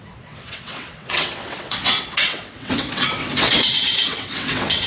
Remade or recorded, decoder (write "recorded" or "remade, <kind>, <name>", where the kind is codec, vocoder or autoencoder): remade, vocoder, WaveNeXt